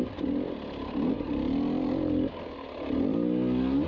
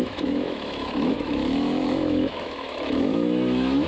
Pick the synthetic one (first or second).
second